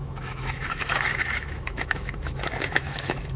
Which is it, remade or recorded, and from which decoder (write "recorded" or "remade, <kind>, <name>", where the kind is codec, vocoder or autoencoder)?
remade, autoencoder, DAC-VAE